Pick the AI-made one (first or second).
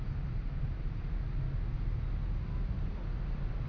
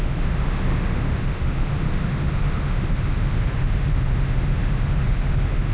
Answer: second